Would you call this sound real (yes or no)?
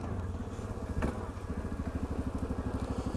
yes